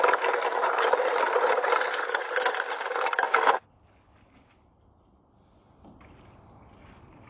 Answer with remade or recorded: recorded